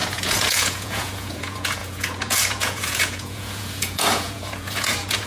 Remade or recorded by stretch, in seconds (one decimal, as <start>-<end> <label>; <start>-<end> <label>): 0.0-5.3 remade